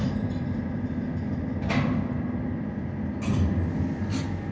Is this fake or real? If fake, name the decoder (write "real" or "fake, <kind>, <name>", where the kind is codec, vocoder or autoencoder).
real